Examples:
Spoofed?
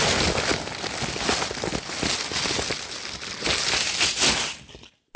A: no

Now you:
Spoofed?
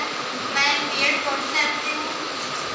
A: no